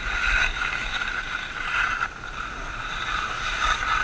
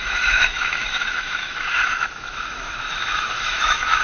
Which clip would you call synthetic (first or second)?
second